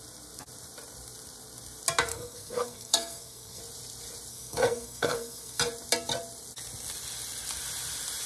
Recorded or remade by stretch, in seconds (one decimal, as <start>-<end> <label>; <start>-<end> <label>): 0.0-2.1 recorded; 2.1-3.6 remade; 3.6-4.3 recorded; 4.3-5.6 remade; 5.6-8.3 recorded